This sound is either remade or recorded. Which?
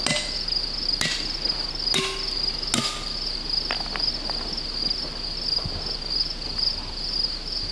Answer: recorded